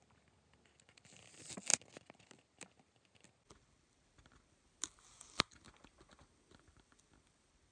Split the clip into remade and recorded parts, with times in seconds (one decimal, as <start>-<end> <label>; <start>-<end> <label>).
0.0-7.7 recorded